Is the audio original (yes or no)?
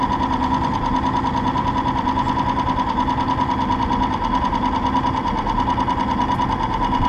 yes